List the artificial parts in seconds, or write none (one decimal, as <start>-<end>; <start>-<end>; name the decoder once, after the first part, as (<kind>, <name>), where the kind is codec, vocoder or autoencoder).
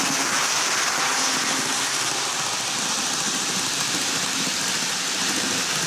none